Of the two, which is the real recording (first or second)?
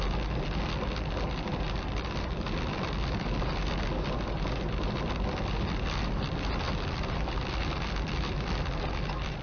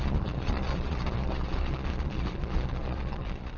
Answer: first